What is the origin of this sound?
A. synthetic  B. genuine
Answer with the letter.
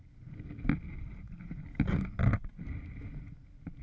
B